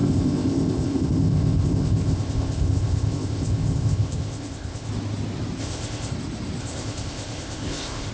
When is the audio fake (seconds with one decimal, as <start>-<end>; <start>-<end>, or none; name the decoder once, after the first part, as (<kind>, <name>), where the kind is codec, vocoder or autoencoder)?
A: 0.0-4.9 (codec, ZipCodec); 5.6-6.1; 6.6-8.1